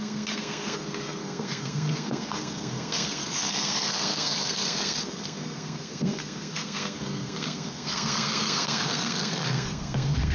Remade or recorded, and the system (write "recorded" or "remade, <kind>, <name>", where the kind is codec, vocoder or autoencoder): remade, codec, SNAC